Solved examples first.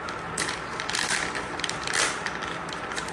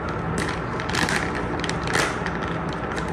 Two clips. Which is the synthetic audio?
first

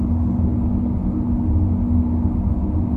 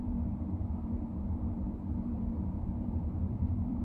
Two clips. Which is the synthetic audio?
second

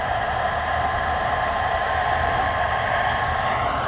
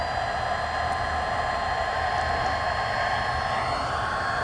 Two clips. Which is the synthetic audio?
first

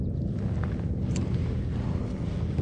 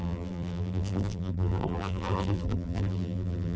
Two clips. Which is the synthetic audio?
second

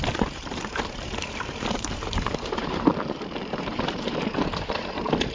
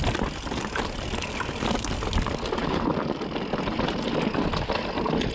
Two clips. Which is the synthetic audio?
first